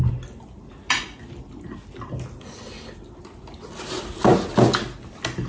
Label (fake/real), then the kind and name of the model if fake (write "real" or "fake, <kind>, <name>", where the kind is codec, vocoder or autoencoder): real